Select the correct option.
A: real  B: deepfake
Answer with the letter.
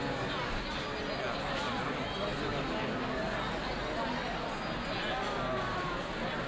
A